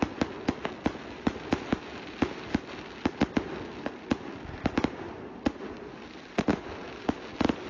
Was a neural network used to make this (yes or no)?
no